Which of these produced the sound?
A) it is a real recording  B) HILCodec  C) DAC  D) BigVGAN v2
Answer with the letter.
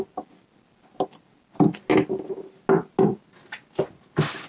A